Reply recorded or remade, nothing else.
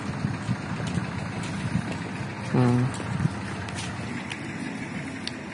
recorded